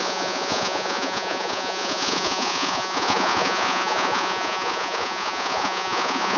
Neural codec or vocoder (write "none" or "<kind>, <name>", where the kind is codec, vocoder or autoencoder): vocoder, Vocos